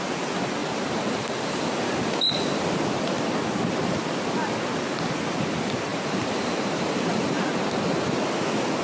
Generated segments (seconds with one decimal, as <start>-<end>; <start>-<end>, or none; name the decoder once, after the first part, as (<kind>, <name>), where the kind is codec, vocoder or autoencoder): 0.6-1.7 (vocoder, BigVGAN v2); 5.9-8.2